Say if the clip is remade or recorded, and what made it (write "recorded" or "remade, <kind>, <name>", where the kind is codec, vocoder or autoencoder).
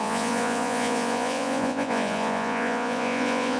remade, vocoder, Vocos